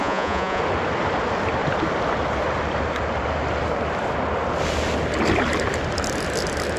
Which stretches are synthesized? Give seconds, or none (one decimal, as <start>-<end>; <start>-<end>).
0.0-0.6